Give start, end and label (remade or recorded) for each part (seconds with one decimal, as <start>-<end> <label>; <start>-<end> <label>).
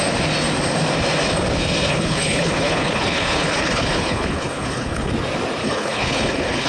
0.0-1.9 recorded; 1.9-5.1 remade; 5.1-5.6 recorded; 5.6-6.7 remade